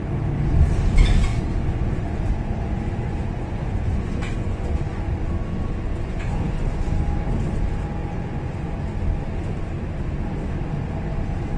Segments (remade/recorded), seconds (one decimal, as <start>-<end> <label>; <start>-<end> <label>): 0.0-1.3 recorded; 1.3-5.1 remade; 5.1-5.9 recorded; 5.9-7.3 remade; 7.3-8.0 recorded; 8.0-8.8 remade; 8.8-11.6 recorded